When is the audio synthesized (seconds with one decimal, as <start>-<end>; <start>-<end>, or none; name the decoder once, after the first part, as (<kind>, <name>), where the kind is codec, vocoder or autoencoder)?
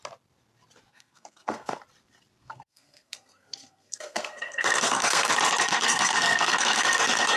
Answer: 0.9-1.8 (codec, SNAC); 2.4-5.3; 5.7-7.4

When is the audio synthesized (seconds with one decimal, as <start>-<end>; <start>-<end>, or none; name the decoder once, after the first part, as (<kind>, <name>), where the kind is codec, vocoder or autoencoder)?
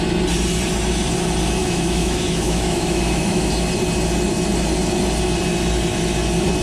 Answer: 1.6-3.5 (autoencoder, DAC-VAE)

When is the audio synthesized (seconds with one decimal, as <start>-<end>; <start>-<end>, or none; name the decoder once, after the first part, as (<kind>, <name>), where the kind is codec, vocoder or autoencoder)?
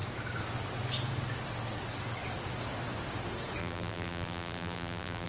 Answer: 3.6-5.3 (vocoder, BigVGAN v2)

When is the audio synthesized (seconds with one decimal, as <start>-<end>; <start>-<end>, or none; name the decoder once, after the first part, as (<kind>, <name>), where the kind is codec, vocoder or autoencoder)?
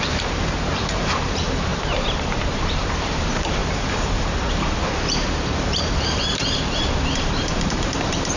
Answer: 0.0-8.4 (vocoder, BigVGAN v2)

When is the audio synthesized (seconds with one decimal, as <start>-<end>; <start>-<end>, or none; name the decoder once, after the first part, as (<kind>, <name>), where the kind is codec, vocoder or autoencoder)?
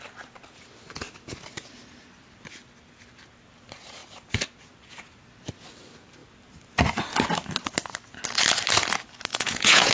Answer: 9.3-9.9 (vocoder, Vocos)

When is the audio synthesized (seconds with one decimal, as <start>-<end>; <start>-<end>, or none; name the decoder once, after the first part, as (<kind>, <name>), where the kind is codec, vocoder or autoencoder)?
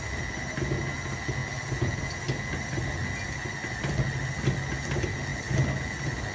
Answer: 3.6-4.3 (vocoder, BigVGAN v2)